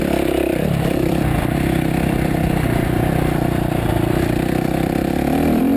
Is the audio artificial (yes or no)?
yes